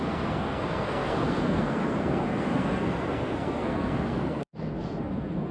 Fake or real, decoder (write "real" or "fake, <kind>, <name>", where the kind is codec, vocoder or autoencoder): fake, codec, SNAC